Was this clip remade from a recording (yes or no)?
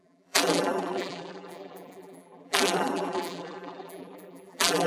yes